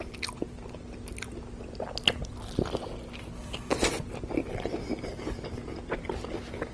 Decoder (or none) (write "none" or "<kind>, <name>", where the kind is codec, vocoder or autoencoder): none